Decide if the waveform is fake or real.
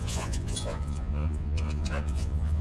fake